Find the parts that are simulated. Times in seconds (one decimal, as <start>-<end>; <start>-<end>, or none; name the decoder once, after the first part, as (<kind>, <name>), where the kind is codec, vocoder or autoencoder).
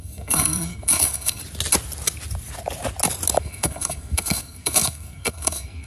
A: 0.0-1.4 (codec, SNAC); 3.4-5.9